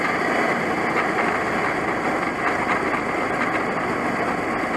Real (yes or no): yes